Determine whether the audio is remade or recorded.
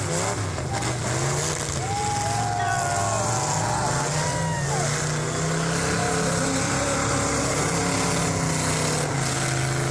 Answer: recorded